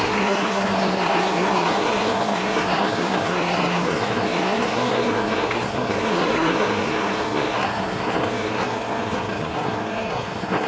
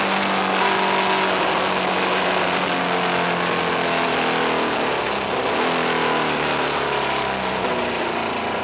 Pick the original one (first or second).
second